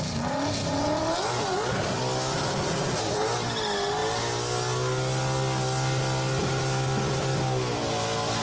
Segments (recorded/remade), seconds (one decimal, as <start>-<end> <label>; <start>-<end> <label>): 0.0-8.4 recorded